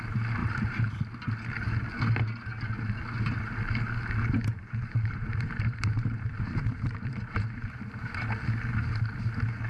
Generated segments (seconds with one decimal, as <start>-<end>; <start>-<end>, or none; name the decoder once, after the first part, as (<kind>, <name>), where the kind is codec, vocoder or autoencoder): 0.4-0.9 (vocoder, BigVGAN v2); 4.5-8.3